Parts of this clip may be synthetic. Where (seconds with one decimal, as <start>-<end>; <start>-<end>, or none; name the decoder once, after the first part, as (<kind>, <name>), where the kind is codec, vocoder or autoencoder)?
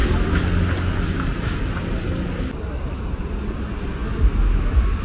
none